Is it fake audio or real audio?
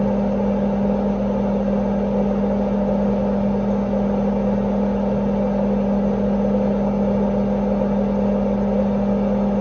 real